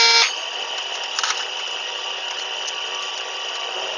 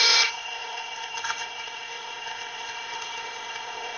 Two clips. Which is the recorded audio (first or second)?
first